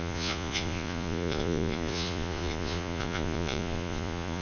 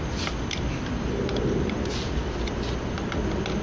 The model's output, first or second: first